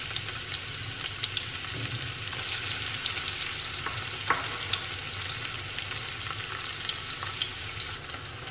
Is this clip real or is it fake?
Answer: real